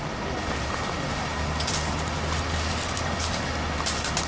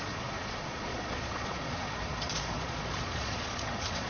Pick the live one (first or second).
first